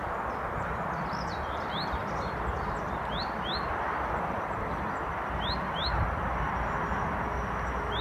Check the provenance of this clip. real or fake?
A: real